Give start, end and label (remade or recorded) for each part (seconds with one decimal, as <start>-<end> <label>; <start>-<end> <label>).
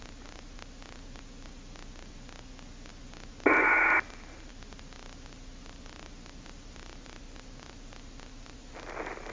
0.0-9.3 recorded